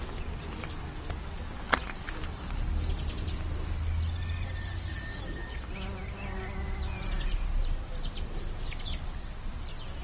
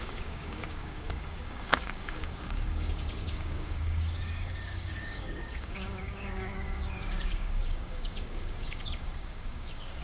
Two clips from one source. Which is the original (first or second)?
first